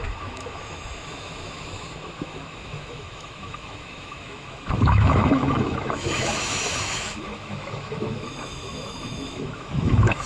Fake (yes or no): yes